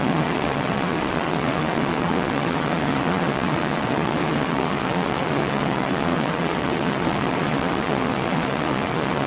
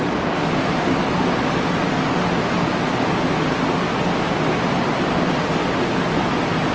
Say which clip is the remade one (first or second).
first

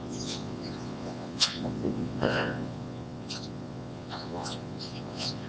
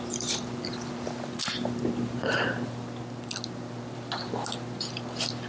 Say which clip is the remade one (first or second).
first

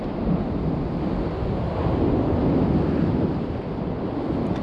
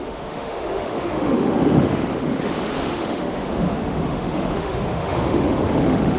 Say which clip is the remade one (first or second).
second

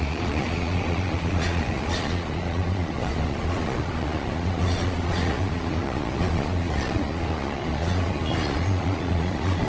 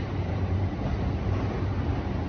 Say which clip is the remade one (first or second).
first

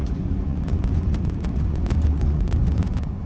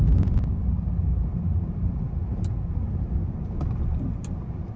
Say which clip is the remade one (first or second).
first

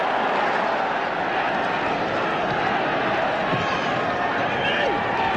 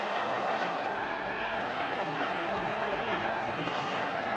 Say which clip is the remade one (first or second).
second